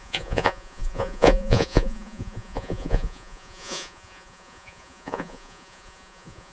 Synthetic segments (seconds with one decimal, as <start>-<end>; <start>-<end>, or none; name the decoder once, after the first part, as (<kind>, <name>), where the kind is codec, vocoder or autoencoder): 0.0-6.5 (vocoder, Vocos)